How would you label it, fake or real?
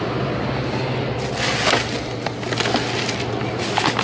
real